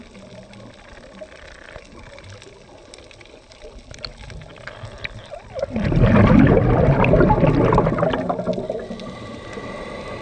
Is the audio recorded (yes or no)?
yes